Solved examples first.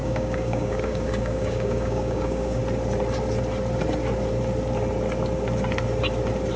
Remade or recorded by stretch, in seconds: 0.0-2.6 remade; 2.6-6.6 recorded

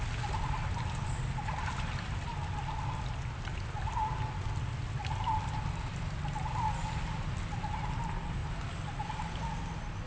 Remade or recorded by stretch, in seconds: 0.0-10.1 recorded

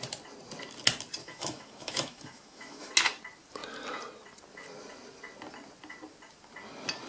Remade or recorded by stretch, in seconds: 0.0-1.2 recorded; 1.2-2.9 remade; 2.9-7.1 recorded

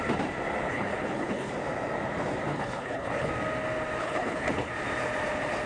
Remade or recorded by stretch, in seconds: 0.0-0.7 recorded; 0.7-1.5 remade; 1.5-2.5 recorded; 2.5-3.3 remade; 3.3-4.0 recorded; 4.0-4.7 remade; 4.7-5.7 recorded

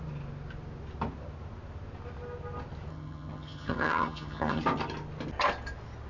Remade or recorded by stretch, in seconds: 0.0-2.9 recorded; 2.9-4.6 remade; 4.6-6.1 recorded

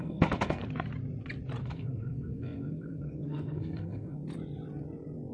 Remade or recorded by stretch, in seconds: 0.0-0.6 remade; 0.6-1.6 recorded; 1.6-4.2 remade; 4.2-5.3 recorded